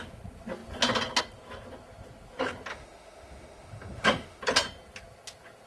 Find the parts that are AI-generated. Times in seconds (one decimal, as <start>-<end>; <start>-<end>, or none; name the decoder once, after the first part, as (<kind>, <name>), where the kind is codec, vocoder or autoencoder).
2.7-4.4 (autoencoder, DAC-VAE)